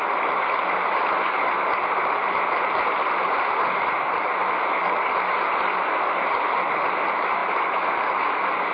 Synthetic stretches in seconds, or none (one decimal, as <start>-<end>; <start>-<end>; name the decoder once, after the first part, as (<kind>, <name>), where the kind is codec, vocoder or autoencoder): none